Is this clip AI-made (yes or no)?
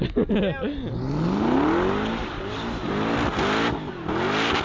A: no